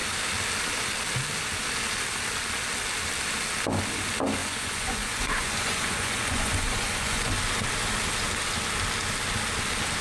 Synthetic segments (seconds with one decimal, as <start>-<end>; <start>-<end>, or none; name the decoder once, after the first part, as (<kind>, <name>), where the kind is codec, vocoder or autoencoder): 4.4-7.3 (vocoder, Vocos)